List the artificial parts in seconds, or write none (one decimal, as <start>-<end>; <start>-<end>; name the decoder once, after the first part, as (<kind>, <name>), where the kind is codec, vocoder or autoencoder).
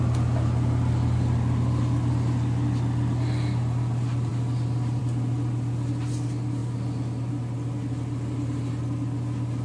none